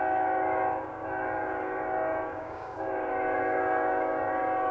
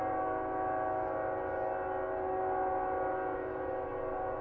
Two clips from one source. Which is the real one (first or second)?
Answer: second